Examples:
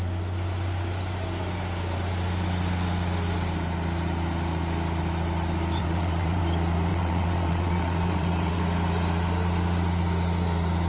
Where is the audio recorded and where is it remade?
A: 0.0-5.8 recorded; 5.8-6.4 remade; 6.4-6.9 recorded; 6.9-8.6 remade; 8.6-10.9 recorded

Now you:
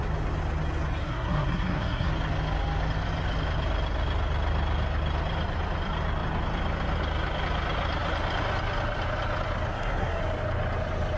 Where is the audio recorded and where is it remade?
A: 0.0-1.0 recorded; 1.0-2.1 remade; 2.1-9.7 recorded; 9.7-10.2 remade; 10.2-11.2 recorded

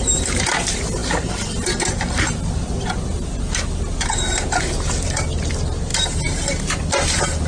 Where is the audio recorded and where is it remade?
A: 0.0-7.5 recorded

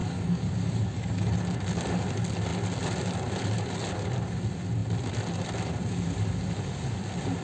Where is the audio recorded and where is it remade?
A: 0.0-1.3 remade; 1.3-7.4 recorded

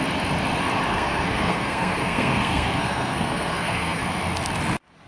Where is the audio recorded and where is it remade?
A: 0.0-0.9 recorded; 0.9-4.0 remade; 4.0-5.1 recorded

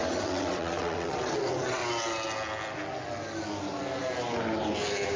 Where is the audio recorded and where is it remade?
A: 0.0-1.8 remade; 1.8-5.2 recorded